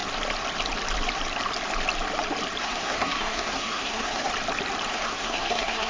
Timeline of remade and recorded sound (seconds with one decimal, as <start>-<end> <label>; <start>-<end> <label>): 0.0-2.6 recorded; 2.6-4.3 remade; 4.3-4.9 recorded; 4.9-5.9 remade